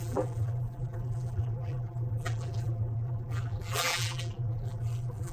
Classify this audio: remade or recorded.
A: remade